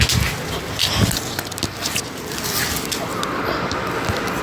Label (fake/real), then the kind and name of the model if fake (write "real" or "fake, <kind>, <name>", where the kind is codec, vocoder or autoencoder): real